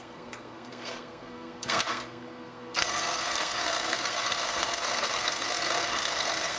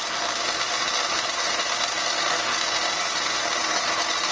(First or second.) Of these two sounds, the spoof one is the first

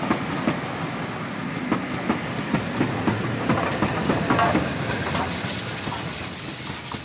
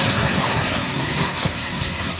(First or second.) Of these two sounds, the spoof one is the second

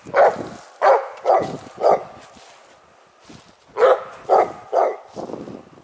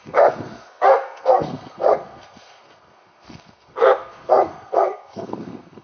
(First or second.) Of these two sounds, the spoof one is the second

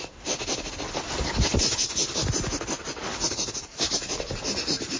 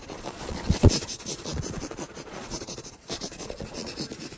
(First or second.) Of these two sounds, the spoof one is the second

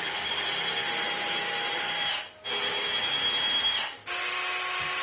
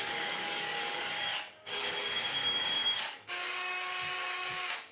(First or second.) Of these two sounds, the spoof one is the second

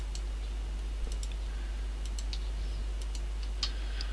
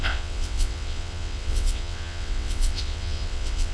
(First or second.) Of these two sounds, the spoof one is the second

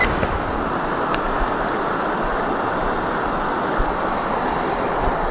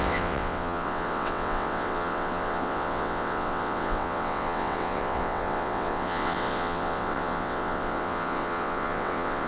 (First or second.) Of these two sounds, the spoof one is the second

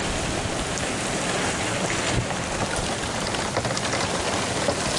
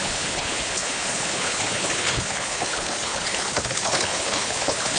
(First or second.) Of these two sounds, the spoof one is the second